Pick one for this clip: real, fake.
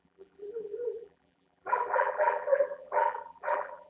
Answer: fake